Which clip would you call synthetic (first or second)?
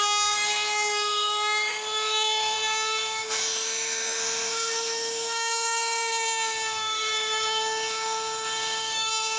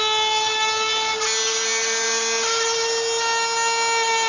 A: first